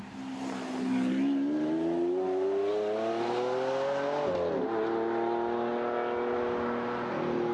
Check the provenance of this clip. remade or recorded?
recorded